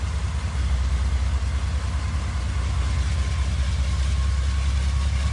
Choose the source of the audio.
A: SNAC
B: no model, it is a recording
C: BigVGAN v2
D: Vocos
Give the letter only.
B